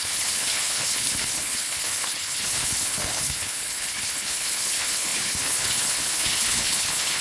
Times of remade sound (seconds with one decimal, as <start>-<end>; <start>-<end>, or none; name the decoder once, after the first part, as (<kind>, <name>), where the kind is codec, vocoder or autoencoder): 0.0-7.2 (codec, HILCodec)